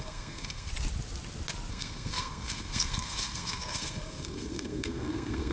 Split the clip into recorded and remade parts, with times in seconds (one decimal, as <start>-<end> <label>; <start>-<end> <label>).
0.0-0.7 remade; 0.7-1.7 recorded; 1.7-5.5 remade